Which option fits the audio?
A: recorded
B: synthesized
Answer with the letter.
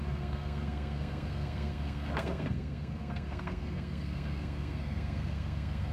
B